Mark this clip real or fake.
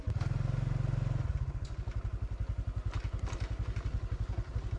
real